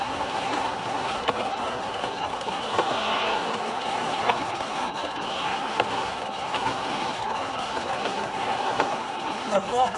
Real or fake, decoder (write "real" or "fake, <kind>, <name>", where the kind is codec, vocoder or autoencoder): fake, codec, SNAC